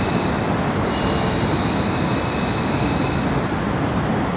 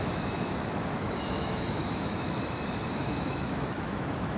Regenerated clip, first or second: second